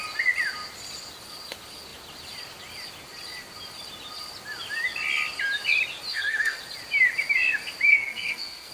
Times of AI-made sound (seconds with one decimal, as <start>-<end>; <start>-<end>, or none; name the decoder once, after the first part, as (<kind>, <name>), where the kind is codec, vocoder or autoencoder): 6.1-6.6 (codec, SNAC); 7.9-8.7